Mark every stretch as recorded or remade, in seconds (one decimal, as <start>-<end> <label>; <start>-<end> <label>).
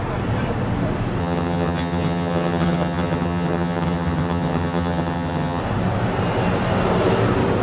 0.0-1.2 recorded; 1.2-5.6 remade; 5.6-7.6 recorded